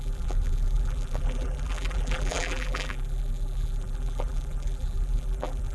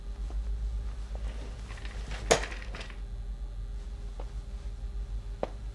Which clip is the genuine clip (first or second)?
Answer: second